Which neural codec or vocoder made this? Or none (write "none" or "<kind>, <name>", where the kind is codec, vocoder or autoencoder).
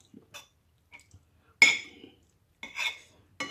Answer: none